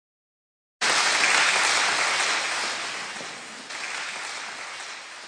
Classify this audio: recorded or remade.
recorded